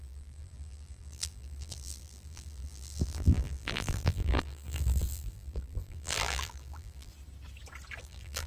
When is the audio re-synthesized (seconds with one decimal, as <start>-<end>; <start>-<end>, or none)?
0.0-7.1; 8.0-8.5